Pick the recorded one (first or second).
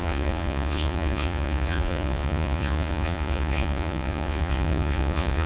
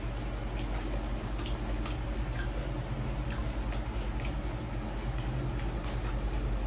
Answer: second